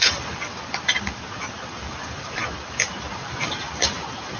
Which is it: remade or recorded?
remade